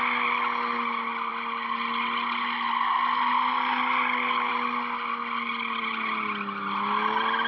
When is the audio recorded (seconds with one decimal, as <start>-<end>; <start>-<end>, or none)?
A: 0.0-7.5